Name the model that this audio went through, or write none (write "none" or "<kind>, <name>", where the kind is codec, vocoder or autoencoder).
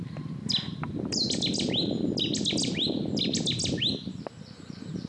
none